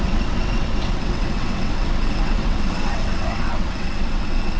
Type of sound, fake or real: fake